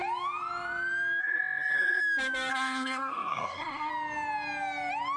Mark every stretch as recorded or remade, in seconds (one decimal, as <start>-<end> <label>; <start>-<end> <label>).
0.0-1.2 recorded; 1.2-2.0 remade; 2.0-2.5 recorded; 2.5-3.9 remade; 3.9-5.2 recorded